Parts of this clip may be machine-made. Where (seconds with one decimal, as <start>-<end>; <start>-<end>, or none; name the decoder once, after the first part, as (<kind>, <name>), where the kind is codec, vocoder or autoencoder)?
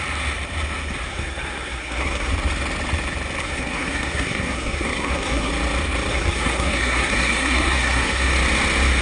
1.1-2.3 (codec, SNAC); 3.4-5.5; 6.1-8.3